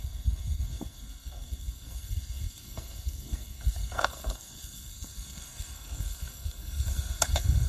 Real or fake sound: fake